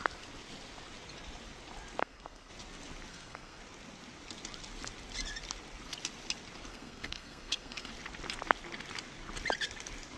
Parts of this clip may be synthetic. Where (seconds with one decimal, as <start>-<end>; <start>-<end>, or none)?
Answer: 2.0-2.5; 3.1-3.6; 6.7-7.9